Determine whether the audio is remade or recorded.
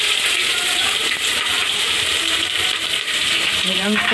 remade